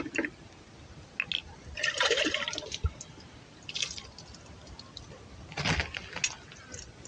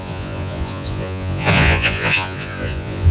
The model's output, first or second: second